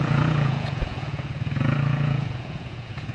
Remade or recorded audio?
remade